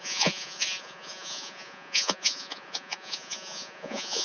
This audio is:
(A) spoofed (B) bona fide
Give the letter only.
A